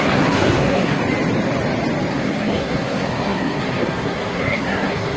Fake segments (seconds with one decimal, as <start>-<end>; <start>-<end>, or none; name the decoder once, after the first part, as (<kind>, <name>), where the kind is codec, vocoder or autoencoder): 0.0-1.0 (codec, SNAC); 2.1-5.2